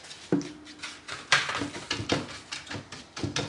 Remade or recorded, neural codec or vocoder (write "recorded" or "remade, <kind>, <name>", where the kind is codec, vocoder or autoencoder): recorded